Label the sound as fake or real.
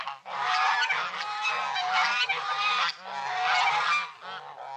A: real